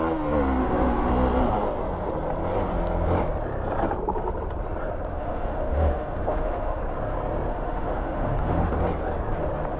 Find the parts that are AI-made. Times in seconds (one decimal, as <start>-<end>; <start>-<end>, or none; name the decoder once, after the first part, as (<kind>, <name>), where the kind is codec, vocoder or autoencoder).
0.6-1.1 (autoencoder, DAC-VAE); 5.1-6.8; 7.5-8.7